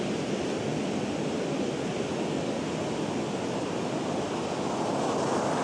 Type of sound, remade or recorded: recorded